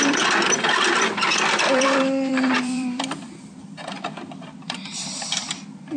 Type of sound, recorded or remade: remade